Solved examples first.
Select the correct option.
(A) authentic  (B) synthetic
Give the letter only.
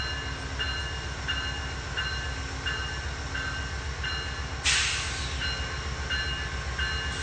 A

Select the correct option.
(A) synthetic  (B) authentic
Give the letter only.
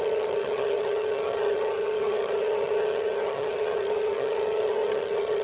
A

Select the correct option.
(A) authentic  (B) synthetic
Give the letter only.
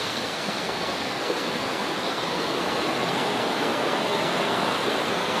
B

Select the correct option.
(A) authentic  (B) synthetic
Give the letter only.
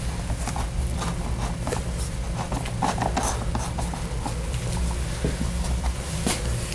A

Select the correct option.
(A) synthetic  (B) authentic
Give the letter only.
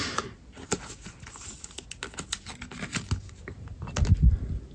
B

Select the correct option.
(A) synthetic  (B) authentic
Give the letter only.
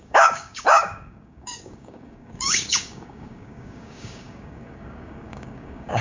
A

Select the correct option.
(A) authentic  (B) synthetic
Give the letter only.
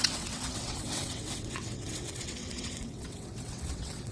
B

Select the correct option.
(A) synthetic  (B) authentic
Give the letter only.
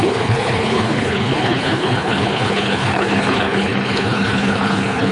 A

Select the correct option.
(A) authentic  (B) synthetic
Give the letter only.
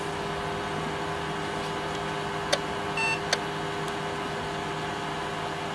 A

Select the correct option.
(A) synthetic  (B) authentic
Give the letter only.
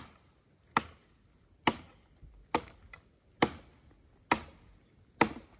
B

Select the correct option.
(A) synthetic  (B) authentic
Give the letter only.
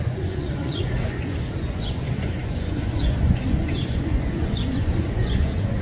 A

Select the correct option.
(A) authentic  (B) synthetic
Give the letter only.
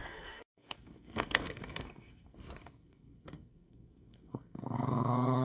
B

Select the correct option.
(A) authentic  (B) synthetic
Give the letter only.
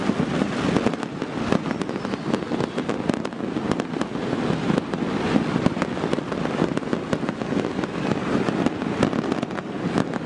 A